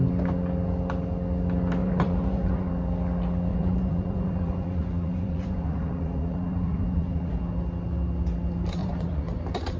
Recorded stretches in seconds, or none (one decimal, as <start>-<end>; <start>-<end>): 0.0-1.8; 2.7-3.5; 7.4-8.8; 9.4-9.8